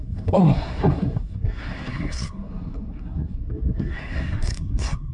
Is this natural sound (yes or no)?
no